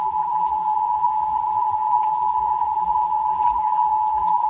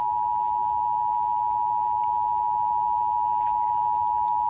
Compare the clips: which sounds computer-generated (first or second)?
first